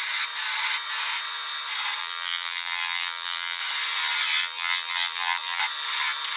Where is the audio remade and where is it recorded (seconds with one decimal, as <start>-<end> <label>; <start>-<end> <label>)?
0.0-2.0 recorded; 2.0-3.6 remade; 3.6-4.4 recorded; 4.4-5.6 remade; 5.6-6.4 recorded